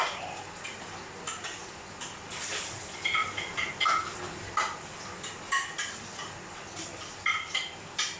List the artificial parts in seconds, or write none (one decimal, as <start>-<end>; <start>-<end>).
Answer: none